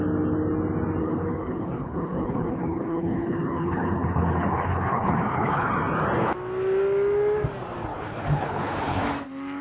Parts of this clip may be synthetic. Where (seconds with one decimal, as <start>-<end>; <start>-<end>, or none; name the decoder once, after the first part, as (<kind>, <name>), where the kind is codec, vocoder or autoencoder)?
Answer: 1.0-5.7 (codec, HILCodec); 7.9-9.0